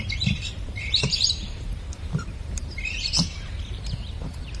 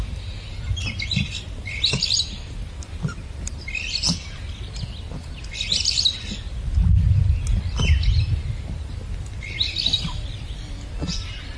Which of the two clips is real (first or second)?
second